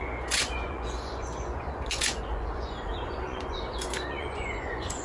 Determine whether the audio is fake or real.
fake